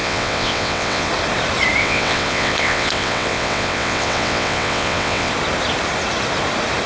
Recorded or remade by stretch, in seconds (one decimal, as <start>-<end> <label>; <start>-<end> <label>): 0.0-1.1 remade; 1.1-1.8 recorded; 1.8-5.3 remade; 5.3-6.9 recorded